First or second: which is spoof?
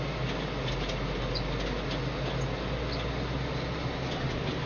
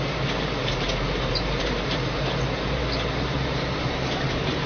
second